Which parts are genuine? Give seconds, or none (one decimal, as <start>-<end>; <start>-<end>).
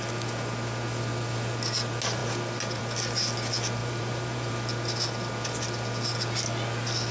0.0-3.8; 4.5-7.1